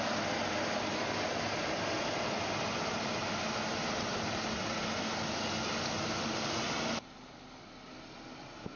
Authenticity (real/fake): real